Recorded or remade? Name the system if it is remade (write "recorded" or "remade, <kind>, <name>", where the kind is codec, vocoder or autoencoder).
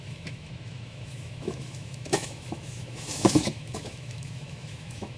remade, autoencoder, DAC-VAE